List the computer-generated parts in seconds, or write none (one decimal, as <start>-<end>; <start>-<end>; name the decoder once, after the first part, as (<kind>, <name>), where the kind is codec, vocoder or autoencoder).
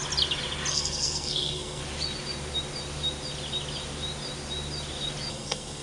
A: 0.7-1.8 (codec, SNAC); 5.3-5.8